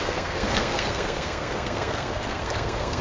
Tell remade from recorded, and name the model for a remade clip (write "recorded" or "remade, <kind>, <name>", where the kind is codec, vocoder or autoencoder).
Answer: remade, codec, SNAC